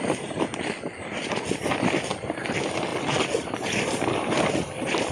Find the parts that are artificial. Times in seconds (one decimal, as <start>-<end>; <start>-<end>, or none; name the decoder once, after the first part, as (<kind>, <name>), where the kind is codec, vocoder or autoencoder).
none